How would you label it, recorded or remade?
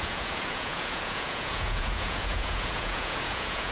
remade